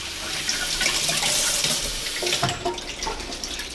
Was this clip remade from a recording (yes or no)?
no